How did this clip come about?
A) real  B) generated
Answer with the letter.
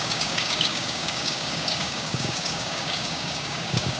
B